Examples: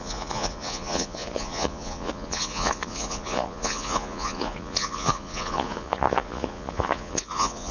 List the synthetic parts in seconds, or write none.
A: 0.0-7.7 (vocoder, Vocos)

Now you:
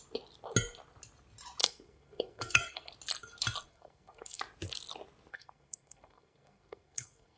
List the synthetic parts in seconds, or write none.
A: 1.6-2.9 (codec, SNAC); 3.7-4.4; 5.3-7.4

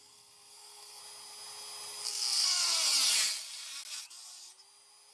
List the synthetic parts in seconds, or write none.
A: 0.0-1.0 (codec, SNAC); 2.1-2.6

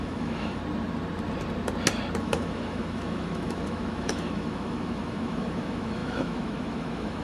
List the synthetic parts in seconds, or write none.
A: 0.0-0.6 (autoencoder, DAC-VAE); 2.2-7.2